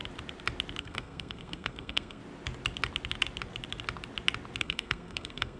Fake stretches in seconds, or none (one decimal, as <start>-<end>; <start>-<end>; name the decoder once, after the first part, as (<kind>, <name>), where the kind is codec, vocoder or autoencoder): 0.8-2.2 (codec, SNAC); 4.6-5.6